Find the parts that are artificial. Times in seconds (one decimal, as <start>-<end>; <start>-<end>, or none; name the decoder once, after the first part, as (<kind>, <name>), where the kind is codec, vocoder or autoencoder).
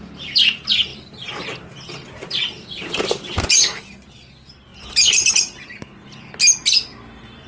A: none